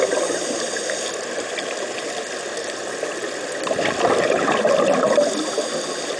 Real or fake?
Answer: real